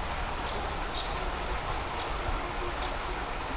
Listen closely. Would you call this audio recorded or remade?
recorded